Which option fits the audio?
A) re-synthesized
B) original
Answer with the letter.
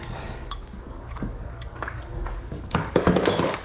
A